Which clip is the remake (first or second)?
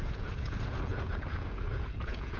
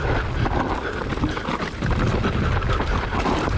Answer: first